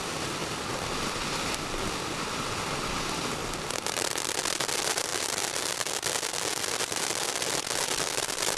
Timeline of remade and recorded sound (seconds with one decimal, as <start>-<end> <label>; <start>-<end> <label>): 0.0-8.6 recorded